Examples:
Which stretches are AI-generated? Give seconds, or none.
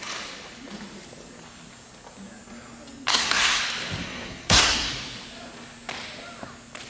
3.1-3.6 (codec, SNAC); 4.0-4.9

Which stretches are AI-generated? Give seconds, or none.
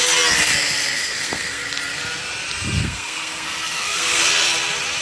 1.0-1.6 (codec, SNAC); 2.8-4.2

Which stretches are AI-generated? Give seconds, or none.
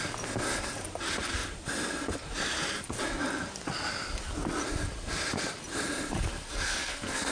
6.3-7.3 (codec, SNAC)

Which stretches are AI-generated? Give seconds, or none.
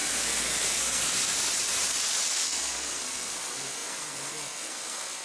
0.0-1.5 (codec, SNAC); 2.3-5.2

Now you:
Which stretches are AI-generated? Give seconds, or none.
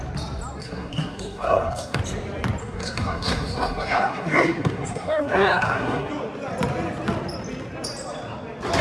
0.6-2.0 (codec, SNAC); 2.6-6.1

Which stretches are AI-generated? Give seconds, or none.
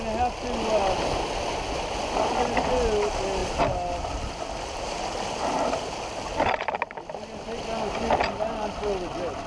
none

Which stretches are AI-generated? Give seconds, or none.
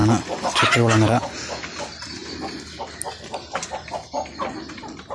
none